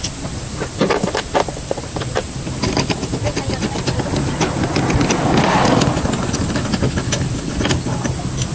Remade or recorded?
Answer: recorded